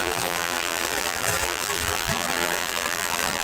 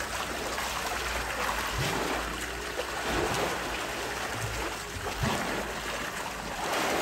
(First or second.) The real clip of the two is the second